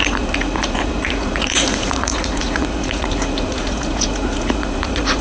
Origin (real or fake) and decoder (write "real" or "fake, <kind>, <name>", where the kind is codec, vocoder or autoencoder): fake, vocoder, Vocos